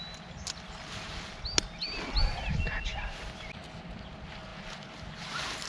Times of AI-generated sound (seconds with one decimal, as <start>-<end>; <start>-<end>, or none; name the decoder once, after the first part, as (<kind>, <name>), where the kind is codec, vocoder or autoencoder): none